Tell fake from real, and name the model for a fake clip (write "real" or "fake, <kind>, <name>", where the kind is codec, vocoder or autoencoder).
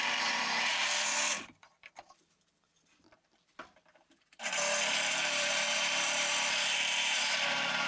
fake, vocoder, BigVGAN v2